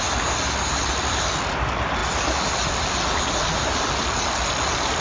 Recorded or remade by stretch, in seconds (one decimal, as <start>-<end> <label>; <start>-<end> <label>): 0.0-5.0 recorded